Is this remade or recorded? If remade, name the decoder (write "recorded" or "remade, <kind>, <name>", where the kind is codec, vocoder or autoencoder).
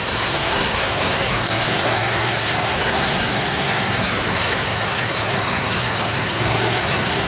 remade, codec, SNAC